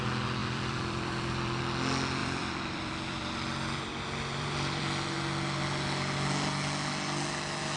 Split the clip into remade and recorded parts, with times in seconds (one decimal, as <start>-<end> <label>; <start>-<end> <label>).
0.0-0.4 recorded; 0.4-1.6 remade; 1.6-2.2 recorded; 2.2-4.8 remade; 4.8-7.8 recorded

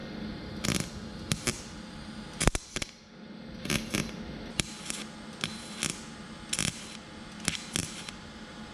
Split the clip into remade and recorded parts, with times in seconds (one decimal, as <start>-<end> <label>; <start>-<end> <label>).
0.0-7.8 recorded; 7.8-8.7 remade